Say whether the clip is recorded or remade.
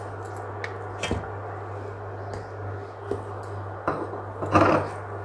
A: recorded